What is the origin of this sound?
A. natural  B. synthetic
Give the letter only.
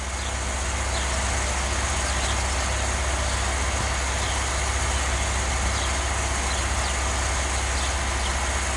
A